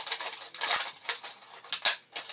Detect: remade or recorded recorded